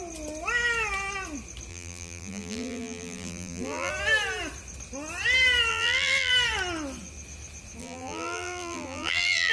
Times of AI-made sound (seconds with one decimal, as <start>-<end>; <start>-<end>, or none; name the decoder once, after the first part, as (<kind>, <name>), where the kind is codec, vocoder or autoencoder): 1.7-3.9 (vocoder, BigVGAN v2); 5.7-6.3; 7.8-9.5